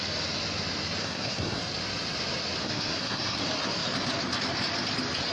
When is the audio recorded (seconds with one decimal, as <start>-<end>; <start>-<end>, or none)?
0.0-1.0; 1.6-2.6; 3.4-5.3